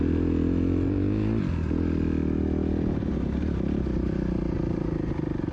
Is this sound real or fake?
real